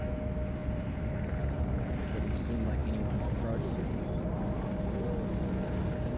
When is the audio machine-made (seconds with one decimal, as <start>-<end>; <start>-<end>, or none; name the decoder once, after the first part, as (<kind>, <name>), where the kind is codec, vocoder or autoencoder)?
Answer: 0.6-2.3 (vocoder, BigVGAN v2)